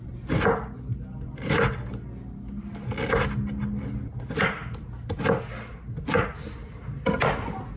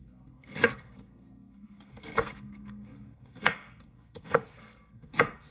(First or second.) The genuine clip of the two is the first